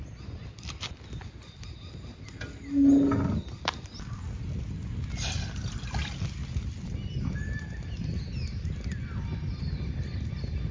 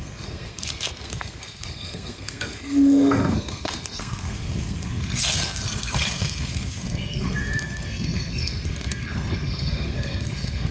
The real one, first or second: first